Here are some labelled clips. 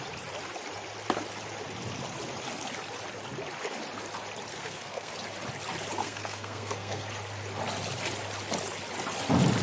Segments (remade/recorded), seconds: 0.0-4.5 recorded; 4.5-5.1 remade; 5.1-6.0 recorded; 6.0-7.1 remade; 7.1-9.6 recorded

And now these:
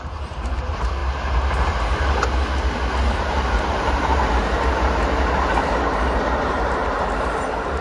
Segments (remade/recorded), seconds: 0.0-1.0 remade; 1.0-3.1 recorded; 3.1-4.4 remade; 4.4-5.5 recorded; 5.5-7.8 remade

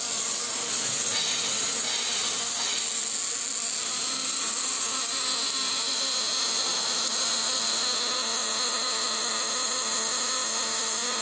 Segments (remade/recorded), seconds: 0.0-11.2 recorded

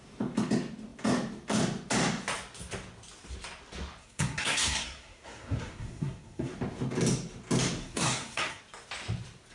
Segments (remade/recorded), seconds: 0.0-4.0 recorded; 4.0-6.5 remade; 6.5-7.8 recorded; 7.8-8.6 remade; 8.6-9.5 recorded

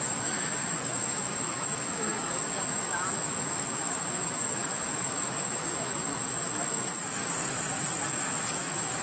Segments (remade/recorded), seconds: 0.0-6.2 remade; 6.2-6.7 recorded; 6.7-7.2 remade; 7.2-8.1 recorded; 8.1-9.0 remade

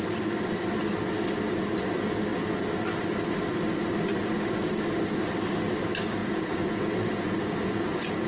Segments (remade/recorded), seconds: 0.0-6.2 recorded; 6.2-8.3 remade